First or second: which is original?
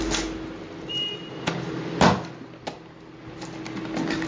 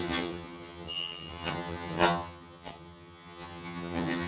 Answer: first